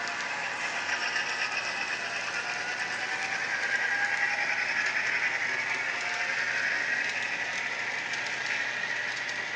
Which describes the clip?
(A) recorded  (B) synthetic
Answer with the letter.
A